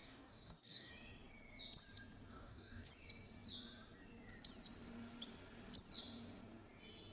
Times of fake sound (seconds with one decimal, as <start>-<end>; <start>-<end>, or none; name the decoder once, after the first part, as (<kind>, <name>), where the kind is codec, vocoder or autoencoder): 0.0-0.9 (codec, DAC); 2.3-2.9